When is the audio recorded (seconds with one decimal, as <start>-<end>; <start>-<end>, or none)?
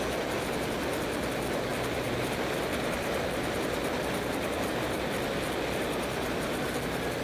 0.0-1.7; 5.0-7.2